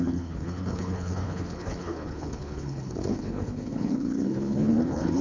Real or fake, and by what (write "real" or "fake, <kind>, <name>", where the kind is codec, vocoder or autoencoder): fake, codec, HILCodec